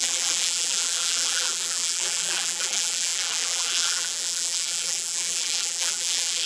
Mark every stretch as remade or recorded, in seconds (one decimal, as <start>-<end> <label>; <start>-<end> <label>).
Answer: 0.0-6.5 remade